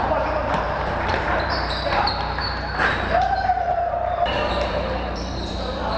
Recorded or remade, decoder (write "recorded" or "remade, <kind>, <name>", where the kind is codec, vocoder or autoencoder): remade, vocoder, BigVGAN v2